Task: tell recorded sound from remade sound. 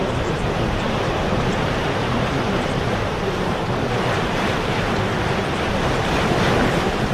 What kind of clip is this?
remade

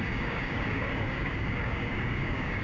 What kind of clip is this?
remade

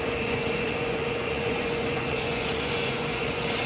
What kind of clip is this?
remade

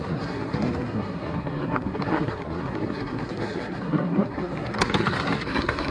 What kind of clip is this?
remade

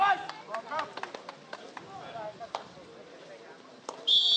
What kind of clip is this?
remade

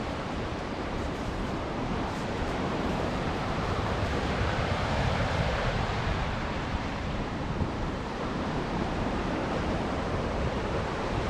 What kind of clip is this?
remade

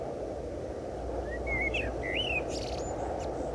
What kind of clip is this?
recorded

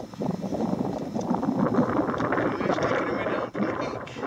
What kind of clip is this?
recorded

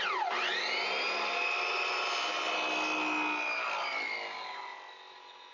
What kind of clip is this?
recorded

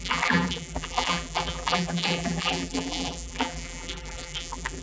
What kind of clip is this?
remade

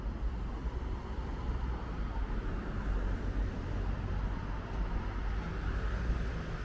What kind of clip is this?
recorded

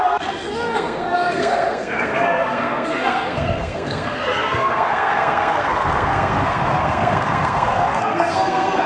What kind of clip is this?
remade